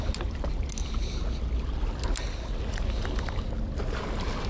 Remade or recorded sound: recorded